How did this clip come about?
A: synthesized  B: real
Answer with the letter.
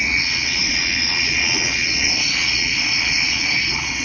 A